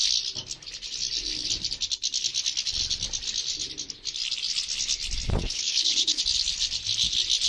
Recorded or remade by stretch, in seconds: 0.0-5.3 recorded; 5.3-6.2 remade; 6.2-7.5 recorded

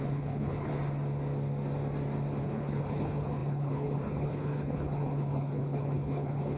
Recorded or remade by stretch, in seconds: 0.0-0.7 remade; 0.7-2.4 recorded; 2.4-6.6 remade

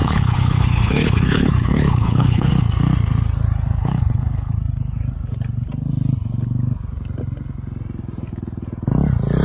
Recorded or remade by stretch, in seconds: 0.0-2.5 remade; 2.5-3.8 recorded; 3.8-4.6 remade; 4.6-9.4 recorded

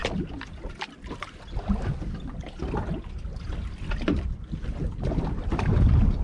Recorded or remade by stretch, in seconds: 0.0-6.2 recorded

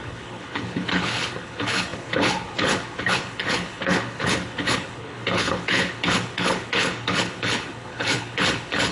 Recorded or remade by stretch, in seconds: 0.0-8.9 remade